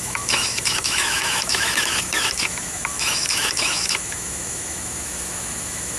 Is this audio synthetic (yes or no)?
yes